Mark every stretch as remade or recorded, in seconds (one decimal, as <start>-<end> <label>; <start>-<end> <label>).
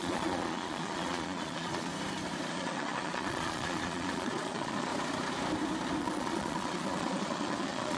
0.0-1.9 remade; 1.9-2.5 recorded; 2.5-4.9 remade; 4.9-6.0 recorded; 6.0-8.0 remade